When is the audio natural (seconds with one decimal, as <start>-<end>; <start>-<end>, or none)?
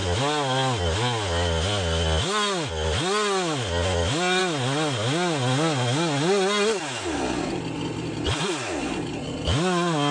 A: 0.0-10.1